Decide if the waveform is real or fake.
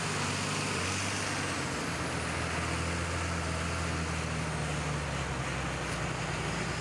real